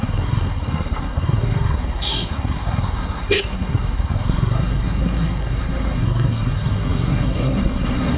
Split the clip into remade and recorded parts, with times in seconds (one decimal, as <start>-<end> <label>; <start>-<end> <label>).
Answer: 0.0-8.2 remade